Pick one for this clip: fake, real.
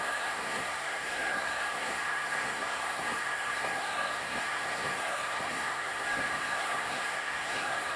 fake